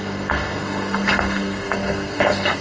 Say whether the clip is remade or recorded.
remade